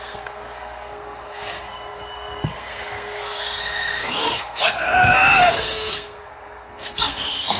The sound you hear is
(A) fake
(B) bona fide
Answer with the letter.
A